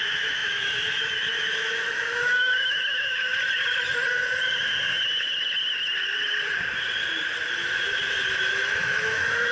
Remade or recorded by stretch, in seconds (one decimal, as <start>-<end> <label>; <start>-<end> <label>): 0.0-3.3 remade; 3.3-8.5 recorded; 8.5-9.5 remade